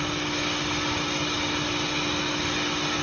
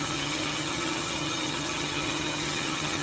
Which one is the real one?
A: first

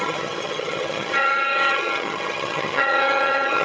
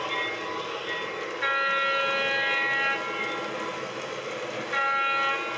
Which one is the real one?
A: second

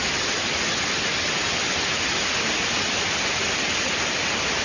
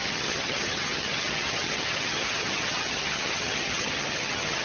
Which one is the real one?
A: first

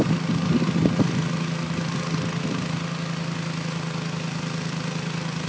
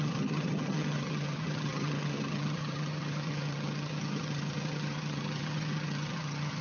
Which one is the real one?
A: first